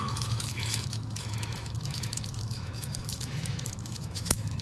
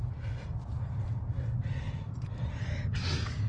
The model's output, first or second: first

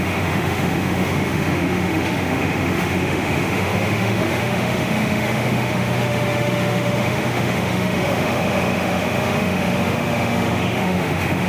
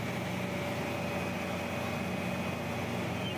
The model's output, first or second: first